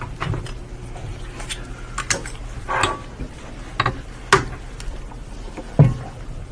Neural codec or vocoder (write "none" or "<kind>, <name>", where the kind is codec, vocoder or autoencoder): none